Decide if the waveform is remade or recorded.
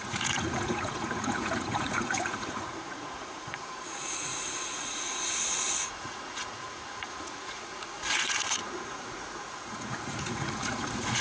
remade